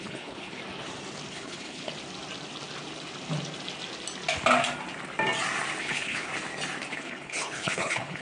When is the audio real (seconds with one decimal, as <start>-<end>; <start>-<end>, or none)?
0.6-1.3; 1.9-5.8; 6.3-6.9